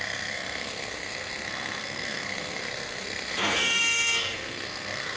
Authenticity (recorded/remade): remade